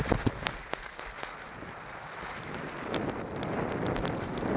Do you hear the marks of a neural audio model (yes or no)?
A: no